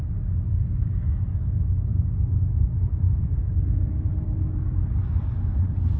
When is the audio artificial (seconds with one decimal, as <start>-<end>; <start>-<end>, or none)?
1.9-4.1